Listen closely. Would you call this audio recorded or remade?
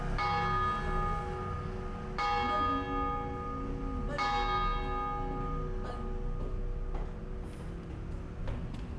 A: recorded